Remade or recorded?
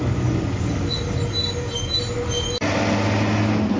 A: recorded